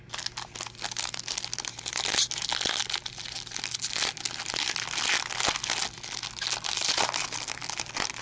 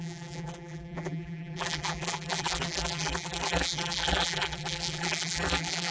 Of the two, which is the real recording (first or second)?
first